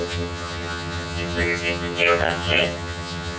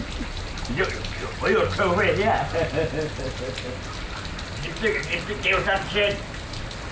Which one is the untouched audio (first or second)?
second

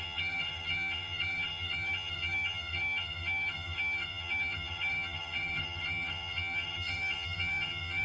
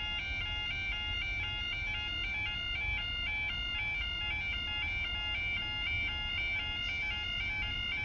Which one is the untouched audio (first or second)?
second